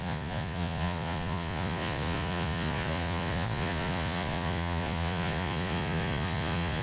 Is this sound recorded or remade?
remade